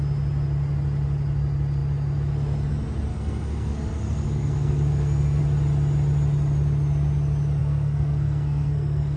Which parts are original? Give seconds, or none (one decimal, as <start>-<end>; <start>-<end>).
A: 0.0-3.1; 5.4-7.6